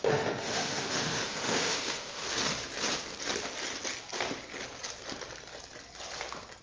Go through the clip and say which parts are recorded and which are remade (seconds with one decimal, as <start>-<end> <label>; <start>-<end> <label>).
0.0-2.2 remade; 2.2-6.6 recorded